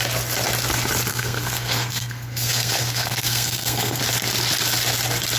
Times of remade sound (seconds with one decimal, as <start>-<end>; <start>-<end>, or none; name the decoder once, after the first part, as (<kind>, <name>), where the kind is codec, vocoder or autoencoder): 1.1-4.0 (codec, SNAC)

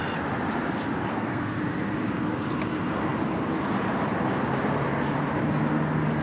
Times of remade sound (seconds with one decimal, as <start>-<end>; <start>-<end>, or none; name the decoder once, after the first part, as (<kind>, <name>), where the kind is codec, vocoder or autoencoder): 1.1-1.6 (codec, SNAC)

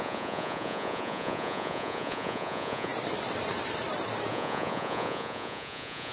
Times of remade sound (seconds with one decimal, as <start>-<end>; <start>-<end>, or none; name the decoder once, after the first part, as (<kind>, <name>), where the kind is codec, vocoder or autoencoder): 0.0-2.9 (vocoder, Vocos); 4.3-6.1

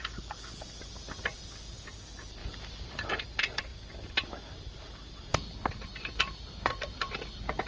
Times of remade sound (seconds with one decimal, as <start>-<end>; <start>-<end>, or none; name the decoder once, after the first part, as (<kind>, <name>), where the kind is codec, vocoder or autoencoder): none